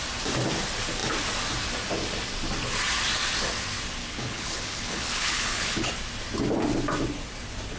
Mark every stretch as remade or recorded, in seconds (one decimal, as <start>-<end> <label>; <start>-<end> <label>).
0.0-4.0 recorded; 4.0-5.9 remade; 5.9-7.8 recorded